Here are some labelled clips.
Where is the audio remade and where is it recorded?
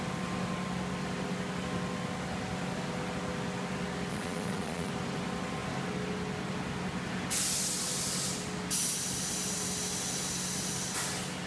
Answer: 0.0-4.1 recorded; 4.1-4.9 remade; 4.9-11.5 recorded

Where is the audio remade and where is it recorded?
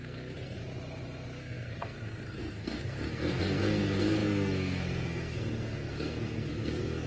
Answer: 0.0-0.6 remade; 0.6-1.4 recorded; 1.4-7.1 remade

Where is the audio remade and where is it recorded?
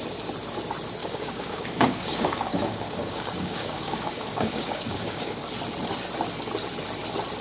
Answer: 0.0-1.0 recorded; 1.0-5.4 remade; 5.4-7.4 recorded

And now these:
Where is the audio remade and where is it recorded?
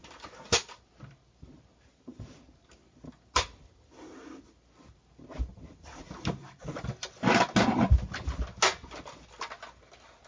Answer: 0.0-10.3 recorded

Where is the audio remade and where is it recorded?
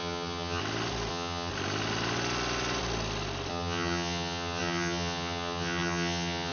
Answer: 0.0-0.6 remade; 0.6-1.1 recorded; 1.1-1.5 remade; 1.5-3.5 recorded; 3.5-6.5 remade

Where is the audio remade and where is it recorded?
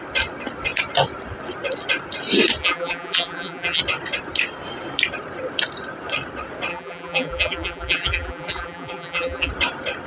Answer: 0.0-2.6 recorded; 2.6-3.8 remade; 3.8-6.7 recorded; 6.7-9.5 remade; 9.5-10.1 recorded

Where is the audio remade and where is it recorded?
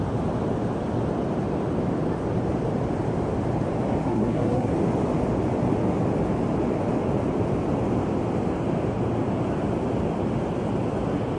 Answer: 0.0-4.0 recorded; 4.0-4.7 remade; 4.7-11.4 recorded